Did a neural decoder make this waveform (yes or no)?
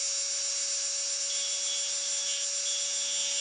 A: no